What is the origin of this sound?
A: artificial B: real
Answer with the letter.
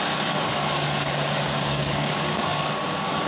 A